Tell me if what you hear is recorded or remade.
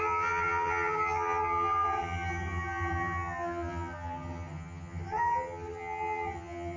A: remade